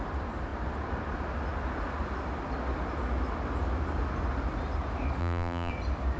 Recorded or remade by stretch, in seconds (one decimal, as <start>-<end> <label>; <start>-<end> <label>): 0.0-5.2 recorded; 5.2-5.7 remade; 5.7-6.2 recorded